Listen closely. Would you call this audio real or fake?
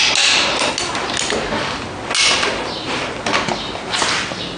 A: real